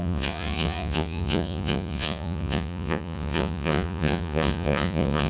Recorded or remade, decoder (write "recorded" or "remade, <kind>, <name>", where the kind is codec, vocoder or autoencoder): remade, vocoder, Vocos